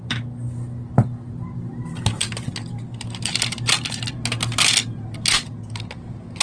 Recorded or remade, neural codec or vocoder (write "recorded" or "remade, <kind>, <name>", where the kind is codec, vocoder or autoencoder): recorded